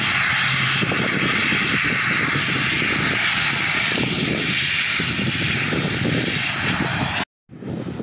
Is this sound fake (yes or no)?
no